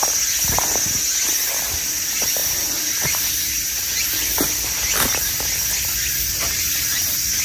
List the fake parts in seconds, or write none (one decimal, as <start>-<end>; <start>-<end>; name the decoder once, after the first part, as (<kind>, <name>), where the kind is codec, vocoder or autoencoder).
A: none